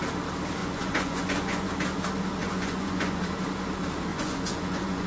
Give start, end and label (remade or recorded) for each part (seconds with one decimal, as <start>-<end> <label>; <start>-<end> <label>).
0.0-0.6 recorded; 0.6-1.7 remade; 1.7-2.4 recorded; 2.4-3.2 remade; 3.2-4.1 recorded; 4.1-5.1 remade